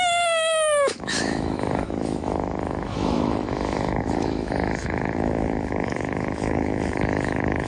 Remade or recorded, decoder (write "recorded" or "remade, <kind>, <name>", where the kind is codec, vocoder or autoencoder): remade, autoencoder, DAC-VAE